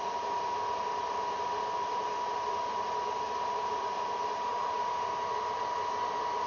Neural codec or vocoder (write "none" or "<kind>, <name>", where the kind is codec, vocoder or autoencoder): none